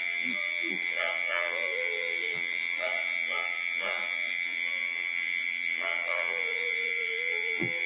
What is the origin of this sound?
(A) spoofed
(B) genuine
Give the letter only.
A